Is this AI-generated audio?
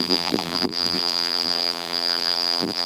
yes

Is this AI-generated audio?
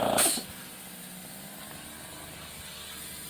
no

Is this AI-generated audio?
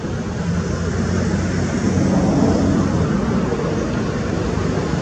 no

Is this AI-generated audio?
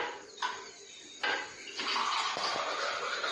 no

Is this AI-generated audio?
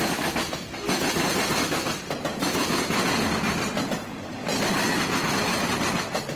no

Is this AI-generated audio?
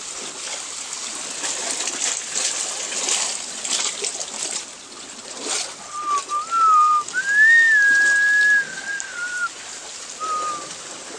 no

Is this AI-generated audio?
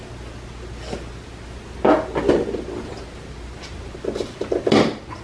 no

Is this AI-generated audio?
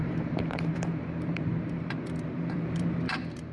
yes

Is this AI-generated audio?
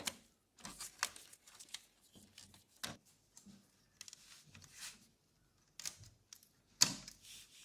no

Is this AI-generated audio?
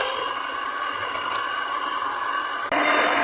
no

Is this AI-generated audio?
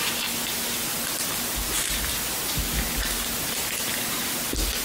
no